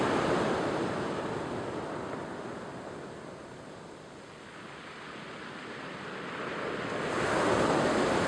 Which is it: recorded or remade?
recorded